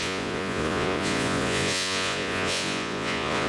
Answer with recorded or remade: remade